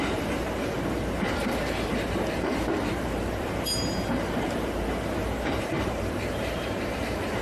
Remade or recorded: remade